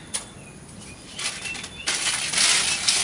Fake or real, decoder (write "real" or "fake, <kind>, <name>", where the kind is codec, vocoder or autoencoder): real